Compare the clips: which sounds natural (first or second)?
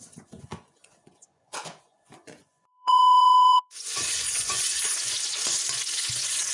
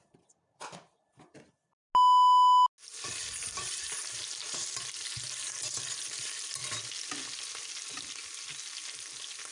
second